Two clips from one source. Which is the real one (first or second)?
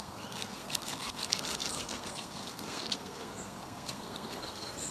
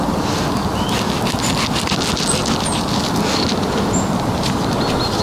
second